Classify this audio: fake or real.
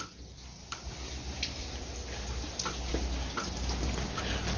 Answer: real